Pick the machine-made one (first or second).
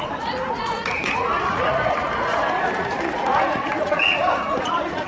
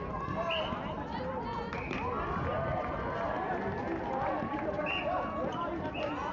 first